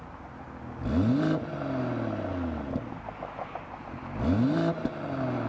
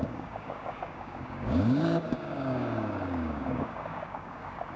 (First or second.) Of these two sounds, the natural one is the first